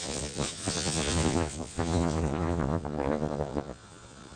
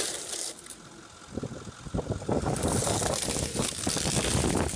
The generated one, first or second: first